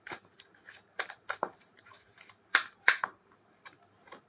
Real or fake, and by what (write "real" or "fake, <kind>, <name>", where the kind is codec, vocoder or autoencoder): fake, vocoder, BigVGAN v2